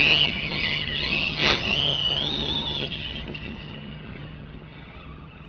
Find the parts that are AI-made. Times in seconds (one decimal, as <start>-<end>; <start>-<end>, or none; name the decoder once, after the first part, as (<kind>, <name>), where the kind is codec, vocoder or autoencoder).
0.0-5.5 (vocoder, HiFi-GAN)